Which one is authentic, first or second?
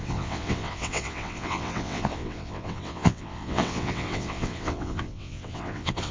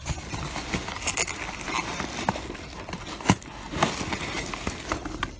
second